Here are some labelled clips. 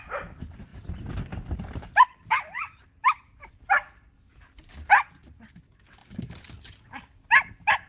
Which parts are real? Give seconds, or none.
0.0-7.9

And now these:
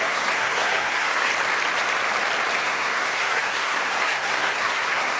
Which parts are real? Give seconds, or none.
1.3-2.6

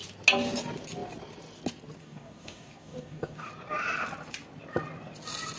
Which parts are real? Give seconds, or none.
0.0-2.0; 3.5-5.6

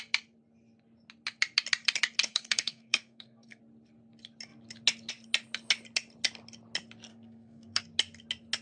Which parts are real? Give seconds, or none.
0.0-2.3; 3.6-7.1; 7.8-8.6

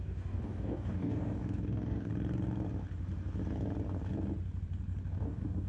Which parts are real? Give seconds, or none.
2.1-5.1

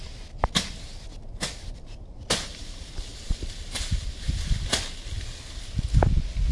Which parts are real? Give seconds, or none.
0.0-6.5